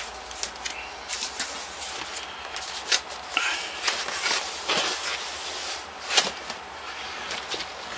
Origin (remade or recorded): recorded